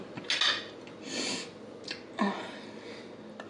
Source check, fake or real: real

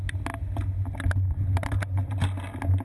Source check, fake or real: real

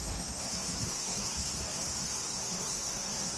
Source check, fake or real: fake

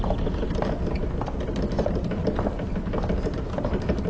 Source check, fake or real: real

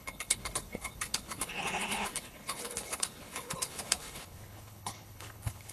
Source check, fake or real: fake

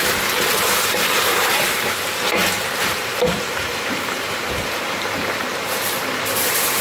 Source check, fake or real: fake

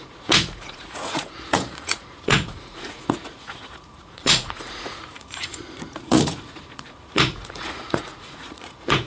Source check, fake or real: fake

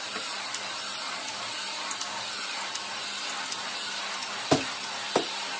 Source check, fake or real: real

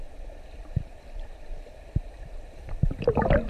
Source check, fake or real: fake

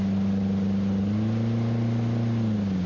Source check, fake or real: real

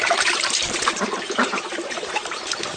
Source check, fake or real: fake